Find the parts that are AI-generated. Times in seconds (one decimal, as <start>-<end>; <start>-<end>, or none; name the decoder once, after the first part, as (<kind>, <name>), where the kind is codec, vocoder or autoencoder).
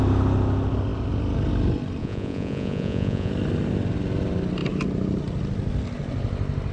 2.0-3.3 (vocoder, Vocos)